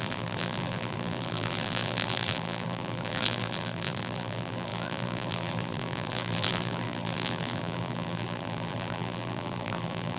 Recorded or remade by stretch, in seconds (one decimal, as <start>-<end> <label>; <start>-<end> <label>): 0.0-10.2 remade